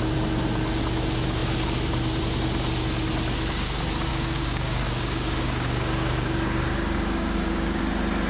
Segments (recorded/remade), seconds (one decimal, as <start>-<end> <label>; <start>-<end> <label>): 0.0-4.1 recorded; 4.1-7.8 remade; 7.8-8.3 recorded